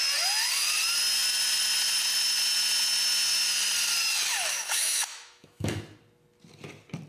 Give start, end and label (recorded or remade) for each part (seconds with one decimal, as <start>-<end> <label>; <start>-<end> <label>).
0.0-4.5 recorded; 4.5-5.8 remade; 5.8-7.1 recorded

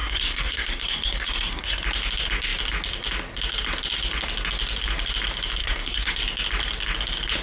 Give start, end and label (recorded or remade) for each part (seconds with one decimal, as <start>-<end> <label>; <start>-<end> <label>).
0.0-1.8 remade; 1.8-5.6 recorded; 5.6-6.2 remade; 6.2-7.4 recorded